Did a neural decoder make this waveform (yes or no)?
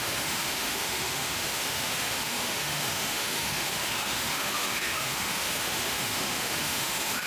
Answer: yes